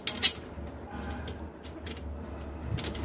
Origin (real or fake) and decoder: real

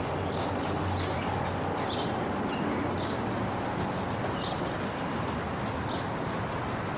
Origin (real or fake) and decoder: real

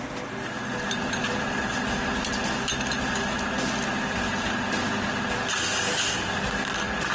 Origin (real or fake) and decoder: real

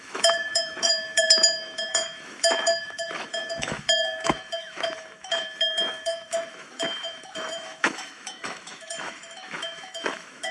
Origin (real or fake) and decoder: fake, autoencoder, DAC-VAE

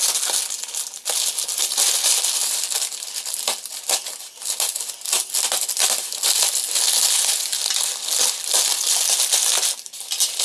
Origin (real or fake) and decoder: real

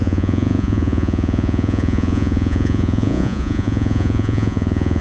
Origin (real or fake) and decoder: fake, vocoder, Vocos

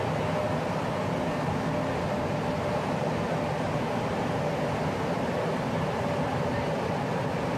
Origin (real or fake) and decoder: real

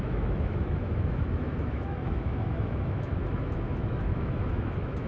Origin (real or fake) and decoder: fake, autoencoder, DAC-VAE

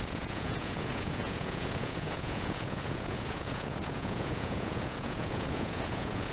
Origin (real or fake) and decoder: fake, vocoder, Vocos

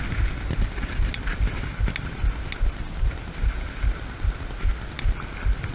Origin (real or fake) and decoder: real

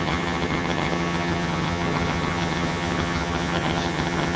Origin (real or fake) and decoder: fake, vocoder, HiFi-GAN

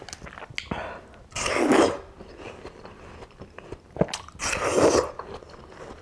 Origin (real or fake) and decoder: real